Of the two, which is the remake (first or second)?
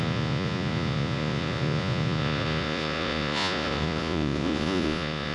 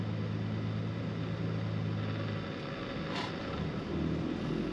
first